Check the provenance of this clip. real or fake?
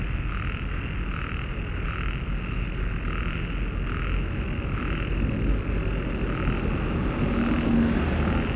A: real